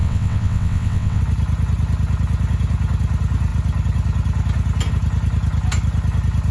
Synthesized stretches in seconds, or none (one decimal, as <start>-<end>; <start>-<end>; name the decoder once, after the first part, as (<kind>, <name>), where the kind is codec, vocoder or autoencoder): 0.0-1.2 (vocoder, WaveNeXt)

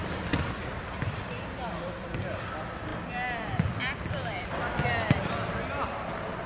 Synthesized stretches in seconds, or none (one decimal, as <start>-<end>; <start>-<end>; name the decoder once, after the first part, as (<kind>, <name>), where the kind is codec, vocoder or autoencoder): none

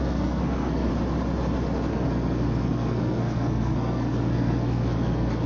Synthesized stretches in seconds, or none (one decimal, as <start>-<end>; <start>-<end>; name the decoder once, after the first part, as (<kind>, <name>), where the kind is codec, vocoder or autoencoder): 0.0-0.9 (codec, SNAC); 1.9-5.5